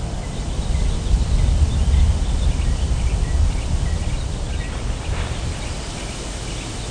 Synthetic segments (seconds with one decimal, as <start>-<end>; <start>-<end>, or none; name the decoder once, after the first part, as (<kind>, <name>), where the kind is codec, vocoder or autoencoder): none

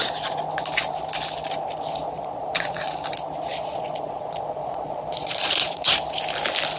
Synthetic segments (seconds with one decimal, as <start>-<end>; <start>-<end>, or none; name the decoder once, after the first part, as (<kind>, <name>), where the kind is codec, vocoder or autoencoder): 2.0-2.9 (vocoder, Vocos); 3.5-5.9

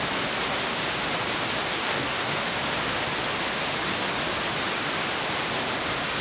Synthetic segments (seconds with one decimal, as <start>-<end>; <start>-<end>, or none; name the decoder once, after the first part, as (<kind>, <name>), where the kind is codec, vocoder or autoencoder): 1.7-2.3 (codec, DAC)

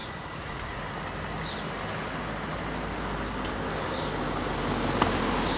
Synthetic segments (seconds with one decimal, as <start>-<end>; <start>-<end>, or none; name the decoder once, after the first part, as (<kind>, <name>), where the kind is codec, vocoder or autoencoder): 0.0-0.8 (vocoder, Vocos)

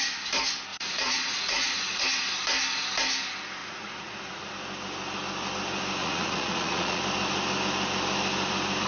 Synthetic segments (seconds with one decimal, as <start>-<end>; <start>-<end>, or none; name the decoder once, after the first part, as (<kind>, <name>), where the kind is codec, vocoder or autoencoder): 0.7-2.0 (vocoder, Vocos); 3.6-4.5; 6.0-7.0

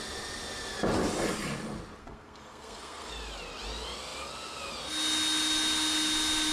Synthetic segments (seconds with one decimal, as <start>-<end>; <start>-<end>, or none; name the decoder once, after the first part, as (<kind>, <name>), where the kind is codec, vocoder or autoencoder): 2.0-3.1 (codec, SNAC)

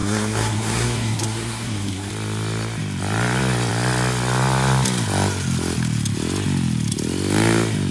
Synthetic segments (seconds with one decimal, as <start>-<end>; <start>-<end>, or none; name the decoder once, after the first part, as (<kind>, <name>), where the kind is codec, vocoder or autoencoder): 0.0-2.1 (codec, SNAC)

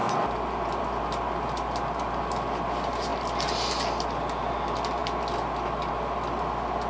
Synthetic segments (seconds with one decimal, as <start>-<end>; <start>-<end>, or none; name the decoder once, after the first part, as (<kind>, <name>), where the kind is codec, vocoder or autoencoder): none